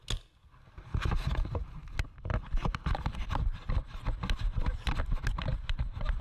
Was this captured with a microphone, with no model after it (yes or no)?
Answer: yes